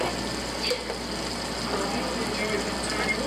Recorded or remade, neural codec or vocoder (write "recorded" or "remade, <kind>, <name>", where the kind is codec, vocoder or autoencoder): recorded